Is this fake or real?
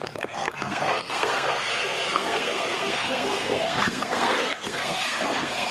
fake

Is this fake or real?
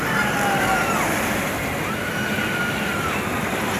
real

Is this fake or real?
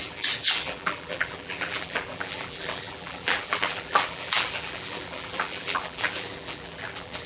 fake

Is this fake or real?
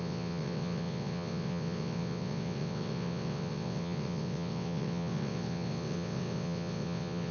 fake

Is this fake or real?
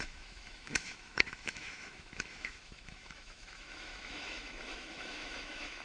fake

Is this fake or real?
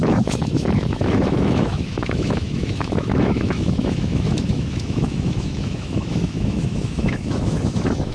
fake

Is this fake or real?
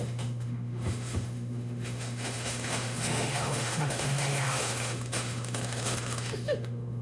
fake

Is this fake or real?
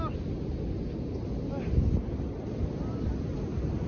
real